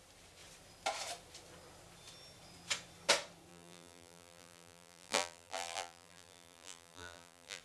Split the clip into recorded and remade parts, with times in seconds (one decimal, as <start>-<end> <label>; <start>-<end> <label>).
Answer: 0.0-3.5 recorded; 3.5-7.6 remade